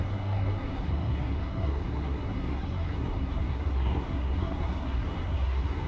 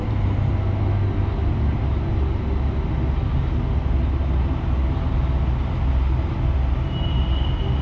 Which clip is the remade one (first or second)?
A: first